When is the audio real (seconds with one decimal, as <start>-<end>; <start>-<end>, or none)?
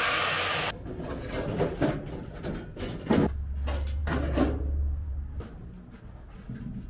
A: 0.0-4.0; 6.0-6.9